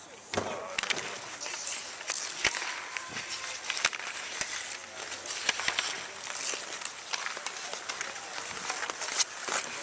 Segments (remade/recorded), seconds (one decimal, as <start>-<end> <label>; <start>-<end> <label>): 0.0-9.8 recorded

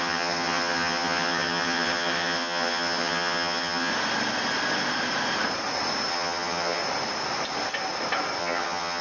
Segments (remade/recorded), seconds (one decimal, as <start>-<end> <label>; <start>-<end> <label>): 0.0-3.9 remade; 3.9-6.1 recorded; 6.1-6.8 remade; 6.8-8.4 recorded; 8.4-9.0 remade

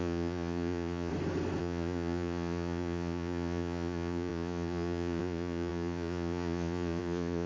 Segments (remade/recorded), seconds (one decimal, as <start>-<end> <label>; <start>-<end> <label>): 0.0-1.1 remade; 1.1-1.6 recorded; 1.6-7.5 remade

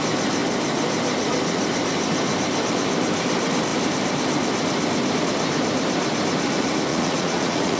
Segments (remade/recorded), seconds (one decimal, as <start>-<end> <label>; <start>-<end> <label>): 0.0-6.9 recorded; 6.9-7.8 remade

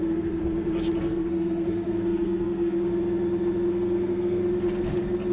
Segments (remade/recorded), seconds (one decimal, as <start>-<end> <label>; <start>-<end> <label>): 0.0-0.4 remade; 0.4-1.0 recorded; 1.0-2.9 remade; 2.9-3.7 recorded; 3.7-4.4 remade; 4.4-5.3 recorded

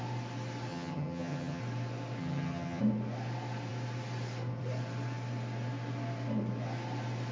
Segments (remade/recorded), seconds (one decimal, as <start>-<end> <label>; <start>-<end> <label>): 0.0-0.7 recorded; 0.7-1.6 remade; 1.6-2.2 recorded; 2.2-2.8 remade; 2.8-7.3 recorded

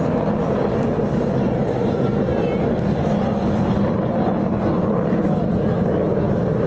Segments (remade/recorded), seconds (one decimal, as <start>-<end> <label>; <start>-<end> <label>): 0.0-6.7 recorded

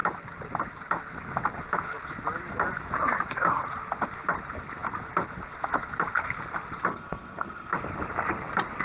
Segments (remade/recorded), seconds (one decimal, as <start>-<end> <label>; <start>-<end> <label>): 0.0-6.9 recorded; 6.9-7.7 remade; 7.7-8.8 recorded